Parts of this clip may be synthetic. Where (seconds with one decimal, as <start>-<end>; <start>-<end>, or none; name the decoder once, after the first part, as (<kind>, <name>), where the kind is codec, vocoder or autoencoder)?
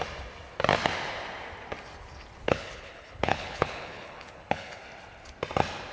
2.4-4.8 (codec, HILCodec)